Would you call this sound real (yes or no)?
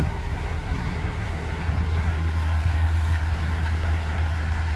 no